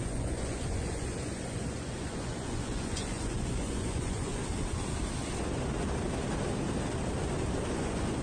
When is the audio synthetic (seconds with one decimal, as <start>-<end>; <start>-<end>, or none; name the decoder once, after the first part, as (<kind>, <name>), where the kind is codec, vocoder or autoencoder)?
0.0-4.4 (vocoder, Vocos); 7.7-8.2